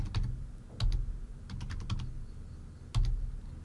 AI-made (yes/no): no